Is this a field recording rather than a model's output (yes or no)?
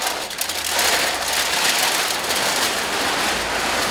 yes